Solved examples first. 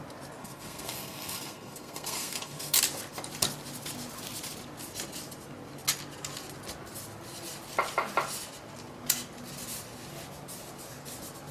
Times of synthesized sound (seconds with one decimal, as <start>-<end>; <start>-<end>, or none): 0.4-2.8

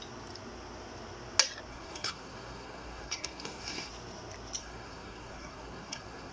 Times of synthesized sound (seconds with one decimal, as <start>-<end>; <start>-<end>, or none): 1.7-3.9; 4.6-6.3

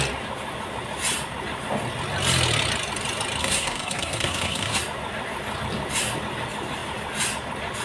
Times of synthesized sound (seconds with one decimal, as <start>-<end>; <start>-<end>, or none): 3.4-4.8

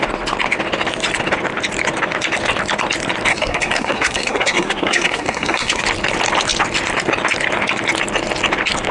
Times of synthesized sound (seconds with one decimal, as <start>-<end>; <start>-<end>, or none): 3.3-5.8